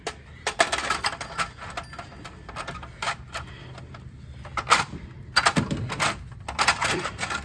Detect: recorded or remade recorded